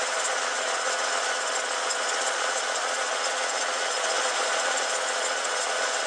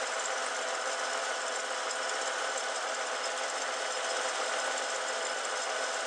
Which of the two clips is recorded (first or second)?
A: second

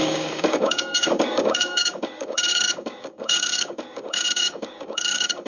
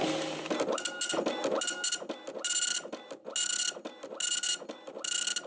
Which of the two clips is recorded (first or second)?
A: second